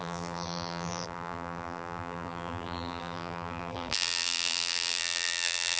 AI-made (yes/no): yes